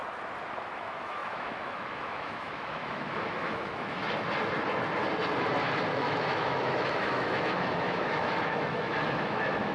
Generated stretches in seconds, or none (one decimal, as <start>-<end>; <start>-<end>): 0.6-4.0; 5.9-9.7